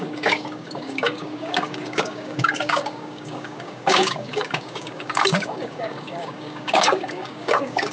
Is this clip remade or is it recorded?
remade